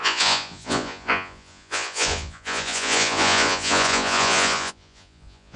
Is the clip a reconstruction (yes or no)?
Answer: yes